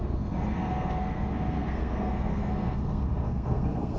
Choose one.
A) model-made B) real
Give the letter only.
A